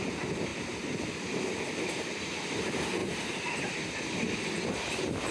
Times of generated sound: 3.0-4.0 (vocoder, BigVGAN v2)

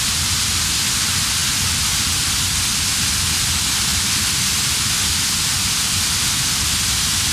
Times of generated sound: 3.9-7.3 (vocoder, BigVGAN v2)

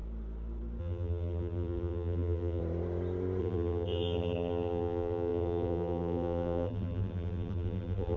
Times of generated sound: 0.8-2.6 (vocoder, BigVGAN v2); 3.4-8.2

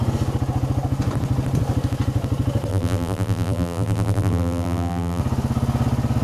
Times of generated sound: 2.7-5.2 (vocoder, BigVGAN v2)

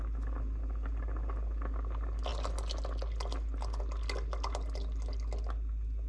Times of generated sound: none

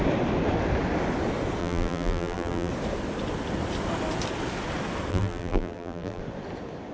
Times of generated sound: 1.6-2.7 (vocoder, BigVGAN v2); 5.1-6.2

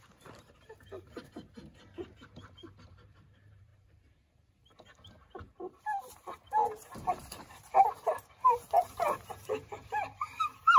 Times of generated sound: 0.0-10.8 (vocoder, BigVGAN v2)